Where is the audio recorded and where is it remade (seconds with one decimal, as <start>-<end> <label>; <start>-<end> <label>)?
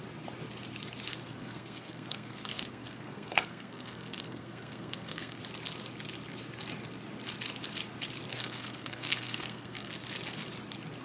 0.0-1.1 recorded; 1.1-5.4 remade; 5.4-8.3 recorded; 8.3-9.9 remade; 9.9-11.0 recorded